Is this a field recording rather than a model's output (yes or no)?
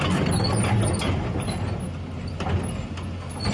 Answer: yes